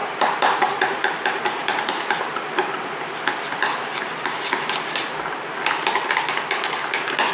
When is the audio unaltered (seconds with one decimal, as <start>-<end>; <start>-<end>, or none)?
2.0-7.3